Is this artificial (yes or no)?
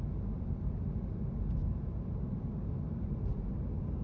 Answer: no